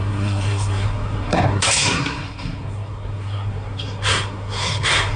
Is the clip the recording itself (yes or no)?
no